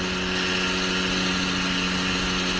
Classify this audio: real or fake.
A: real